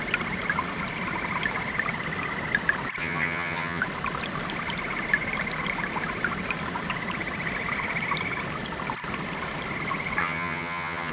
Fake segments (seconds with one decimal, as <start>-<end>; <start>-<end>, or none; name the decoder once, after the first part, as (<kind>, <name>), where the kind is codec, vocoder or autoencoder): 3.0-3.8 (vocoder, HiFi-GAN); 10.2-11.1